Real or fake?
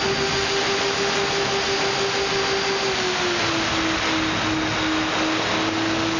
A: real